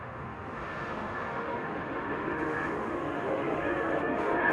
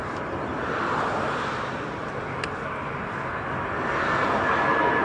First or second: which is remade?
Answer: first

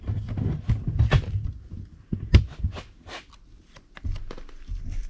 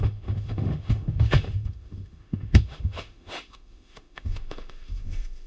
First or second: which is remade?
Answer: second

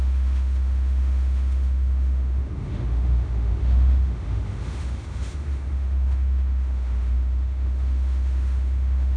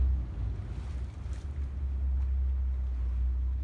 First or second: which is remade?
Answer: first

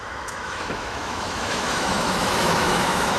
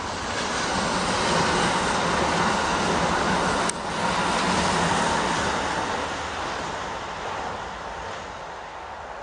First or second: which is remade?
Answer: first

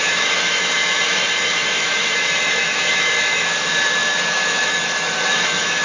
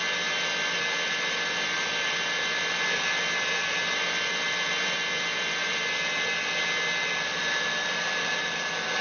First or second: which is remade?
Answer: first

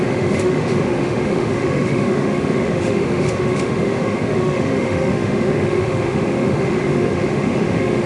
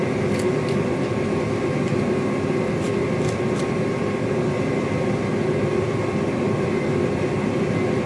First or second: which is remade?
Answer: first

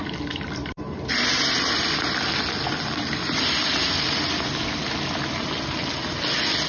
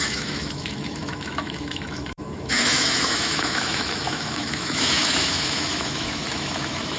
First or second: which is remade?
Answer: second